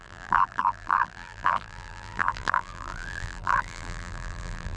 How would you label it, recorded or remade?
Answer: remade